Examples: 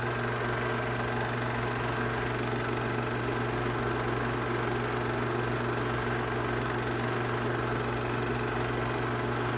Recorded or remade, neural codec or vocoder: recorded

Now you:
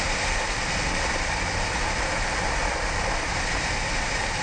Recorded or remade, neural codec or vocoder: recorded